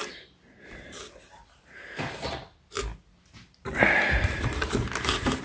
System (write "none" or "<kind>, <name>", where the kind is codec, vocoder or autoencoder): none